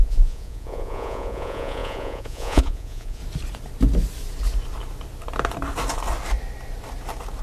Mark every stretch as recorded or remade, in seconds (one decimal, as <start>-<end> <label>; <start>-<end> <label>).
0.0-3.2 remade; 3.2-7.4 recorded